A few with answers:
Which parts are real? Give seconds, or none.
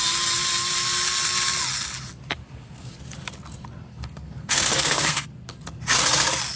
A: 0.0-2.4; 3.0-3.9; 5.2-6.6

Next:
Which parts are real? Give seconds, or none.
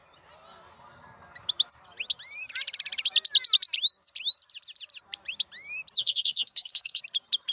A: 0.0-6.0; 7.0-7.5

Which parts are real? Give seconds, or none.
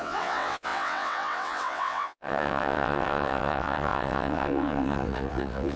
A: none